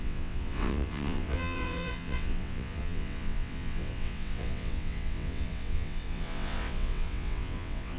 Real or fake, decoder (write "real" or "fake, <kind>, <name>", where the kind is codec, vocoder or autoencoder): fake, vocoder, WaveNeXt